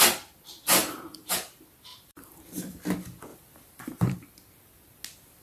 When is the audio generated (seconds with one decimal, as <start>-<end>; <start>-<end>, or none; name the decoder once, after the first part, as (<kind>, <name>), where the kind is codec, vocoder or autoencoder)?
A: 0.8-1.5 (vocoder, BigVGAN v2); 1.9-2.7; 3.3-4.2